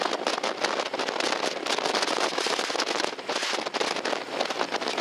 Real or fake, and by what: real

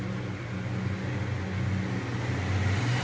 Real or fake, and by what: real